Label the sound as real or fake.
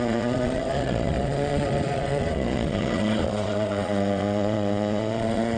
fake